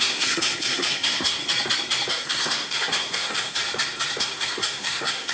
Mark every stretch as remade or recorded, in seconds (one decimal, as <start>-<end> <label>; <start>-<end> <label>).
0.0-1.4 remade; 1.4-2.1 recorded; 2.1-3.6 remade; 3.6-4.2 recorded; 4.2-5.3 remade

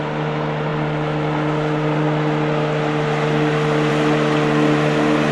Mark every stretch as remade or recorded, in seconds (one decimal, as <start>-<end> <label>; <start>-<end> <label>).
0.0-5.3 recorded

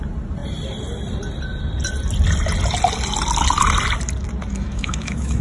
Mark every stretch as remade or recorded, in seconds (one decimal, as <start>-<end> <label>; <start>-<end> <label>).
0.0-4.5 recorded; 4.5-5.4 remade

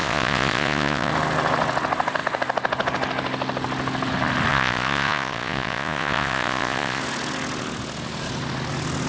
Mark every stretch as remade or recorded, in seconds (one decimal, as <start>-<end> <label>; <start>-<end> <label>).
0.0-1.1 remade; 1.1-4.5 recorded; 4.5-7.0 remade; 7.0-9.1 recorded

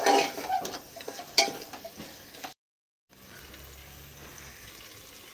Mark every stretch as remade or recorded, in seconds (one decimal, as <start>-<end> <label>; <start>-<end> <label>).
0.0-0.9 recorded; 0.9-1.7 remade; 1.7-2.1 recorded; 2.1-3.4 remade; 3.4-3.8 recorded; 3.8-4.7 remade; 4.7-5.3 recorded